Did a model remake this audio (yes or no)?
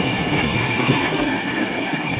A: yes